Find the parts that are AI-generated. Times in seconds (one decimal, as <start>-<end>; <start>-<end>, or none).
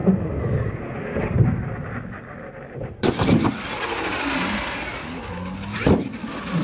none